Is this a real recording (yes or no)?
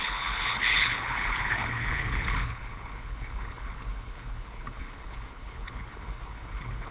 no